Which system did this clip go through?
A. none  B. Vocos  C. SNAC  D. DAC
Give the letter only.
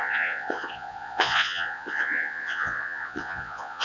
B